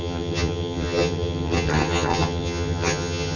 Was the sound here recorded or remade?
remade